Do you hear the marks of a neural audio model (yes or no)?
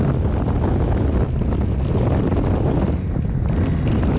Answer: no